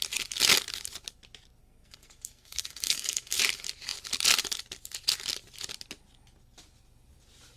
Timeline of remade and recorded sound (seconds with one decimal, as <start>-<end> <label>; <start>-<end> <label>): 0.0-1.6 recorded; 1.6-3.4 remade; 3.4-7.6 recorded